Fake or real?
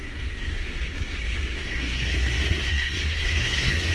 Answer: fake